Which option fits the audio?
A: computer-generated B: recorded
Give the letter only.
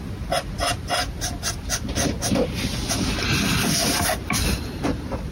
B